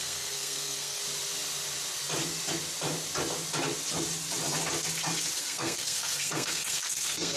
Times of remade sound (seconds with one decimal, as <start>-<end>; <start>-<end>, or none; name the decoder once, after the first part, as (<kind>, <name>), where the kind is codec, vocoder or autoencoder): 0.0-1.0 (codec, SNAC); 5.4-7.4